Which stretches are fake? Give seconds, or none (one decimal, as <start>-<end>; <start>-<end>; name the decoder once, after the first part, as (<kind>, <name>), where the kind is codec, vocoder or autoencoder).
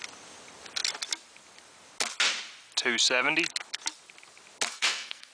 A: 4.7-5.3 (codec, SNAC)